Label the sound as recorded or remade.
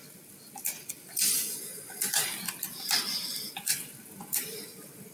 remade